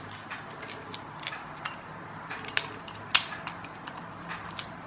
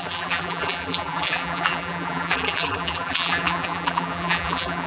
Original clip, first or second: first